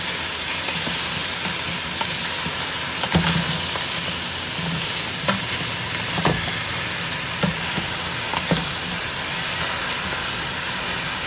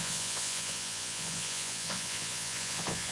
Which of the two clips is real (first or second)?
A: first